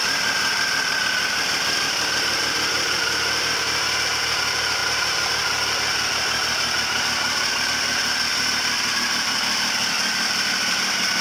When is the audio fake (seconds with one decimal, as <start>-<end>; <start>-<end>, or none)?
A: 0.0-4.8; 7.0-11.2